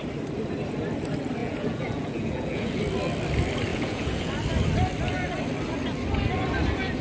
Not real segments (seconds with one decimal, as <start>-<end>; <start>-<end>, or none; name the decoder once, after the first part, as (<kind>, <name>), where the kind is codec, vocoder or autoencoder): 1.4-2.8 (vocoder, Vocos); 3.7-4.3